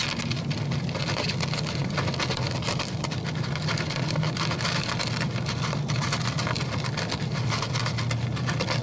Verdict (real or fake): real